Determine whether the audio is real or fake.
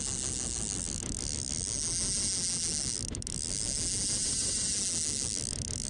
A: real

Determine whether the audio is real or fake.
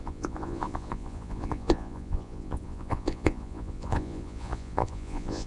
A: fake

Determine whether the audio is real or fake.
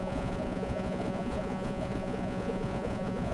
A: fake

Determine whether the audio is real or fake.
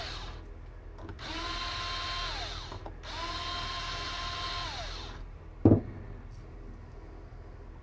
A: real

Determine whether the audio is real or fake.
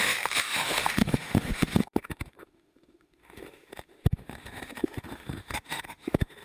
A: fake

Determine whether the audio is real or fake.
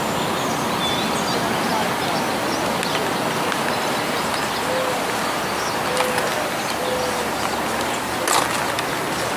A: real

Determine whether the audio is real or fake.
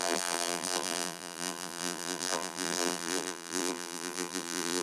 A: fake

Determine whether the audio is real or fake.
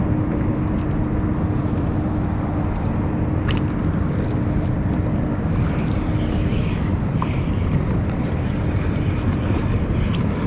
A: real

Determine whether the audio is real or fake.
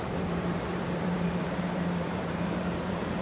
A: fake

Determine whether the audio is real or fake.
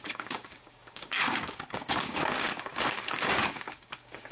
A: fake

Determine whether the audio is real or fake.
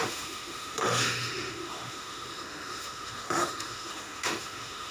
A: fake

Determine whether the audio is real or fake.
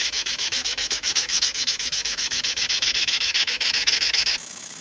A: fake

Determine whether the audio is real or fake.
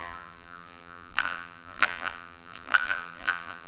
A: fake